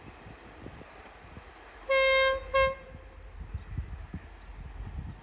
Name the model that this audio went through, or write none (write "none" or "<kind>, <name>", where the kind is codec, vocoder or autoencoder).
none